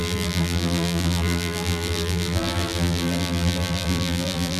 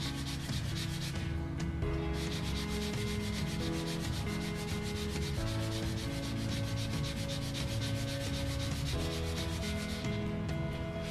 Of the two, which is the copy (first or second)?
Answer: first